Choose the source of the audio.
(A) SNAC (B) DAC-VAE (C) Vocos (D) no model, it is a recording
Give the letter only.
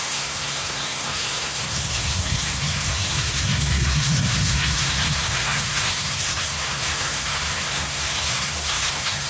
A